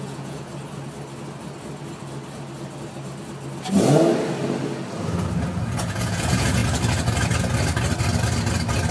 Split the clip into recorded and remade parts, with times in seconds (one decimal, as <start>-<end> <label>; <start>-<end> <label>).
0.0-0.5 remade; 0.5-5.2 recorded; 5.2-6.6 remade; 6.6-8.9 recorded